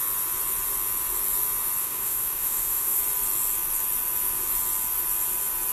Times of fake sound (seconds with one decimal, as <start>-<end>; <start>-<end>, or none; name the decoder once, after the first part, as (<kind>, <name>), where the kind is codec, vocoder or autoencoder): 1.8-3.0 (autoencoder, DAC-VAE)